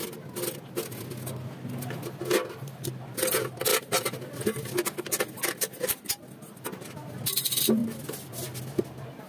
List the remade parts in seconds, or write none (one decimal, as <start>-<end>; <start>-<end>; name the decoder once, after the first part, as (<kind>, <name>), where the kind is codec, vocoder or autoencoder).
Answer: none